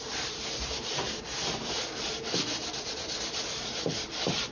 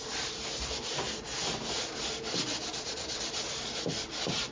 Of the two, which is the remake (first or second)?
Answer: first